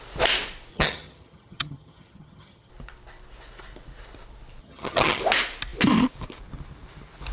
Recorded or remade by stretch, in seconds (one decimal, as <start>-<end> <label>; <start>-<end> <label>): 0.0-0.7 recorded; 0.7-2.7 remade; 2.7-4.6 recorded; 4.6-5.2 remade; 5.2-7.3 recorded